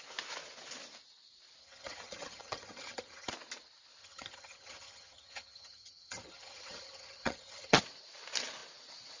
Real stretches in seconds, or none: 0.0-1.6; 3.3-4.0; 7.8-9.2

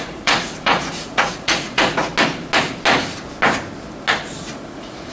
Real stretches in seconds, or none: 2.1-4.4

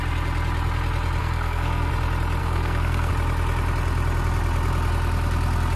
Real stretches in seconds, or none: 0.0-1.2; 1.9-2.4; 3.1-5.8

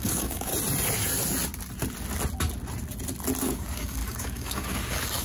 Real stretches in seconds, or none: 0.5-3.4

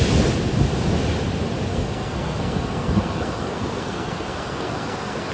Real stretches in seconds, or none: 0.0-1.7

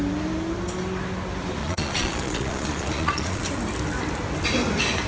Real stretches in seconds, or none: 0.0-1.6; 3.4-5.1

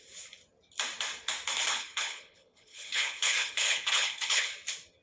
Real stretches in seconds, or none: 0.0-1.7; 4.5-5.0

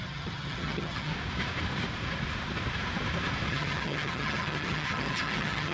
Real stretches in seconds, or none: 1.1-3.5